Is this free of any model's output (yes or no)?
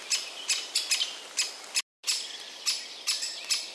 yes